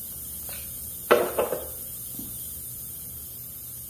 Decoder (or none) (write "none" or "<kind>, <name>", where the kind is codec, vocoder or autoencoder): none